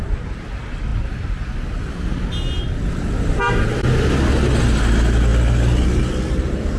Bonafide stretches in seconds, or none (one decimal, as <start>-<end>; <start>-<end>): 0.0-6.8